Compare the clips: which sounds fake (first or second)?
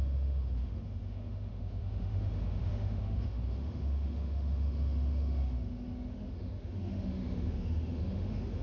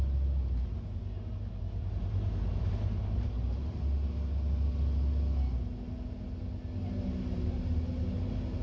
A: first